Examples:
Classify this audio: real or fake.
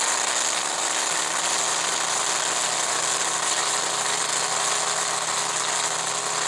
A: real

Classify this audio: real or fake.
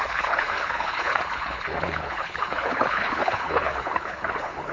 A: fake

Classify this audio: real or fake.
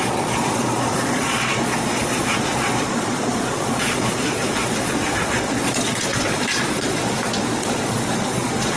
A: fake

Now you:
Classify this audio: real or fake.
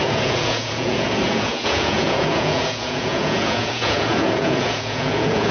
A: fake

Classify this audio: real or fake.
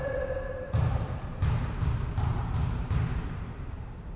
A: fake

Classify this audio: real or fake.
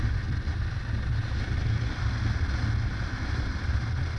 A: real